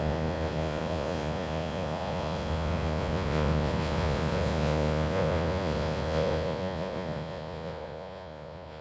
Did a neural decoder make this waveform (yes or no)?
yes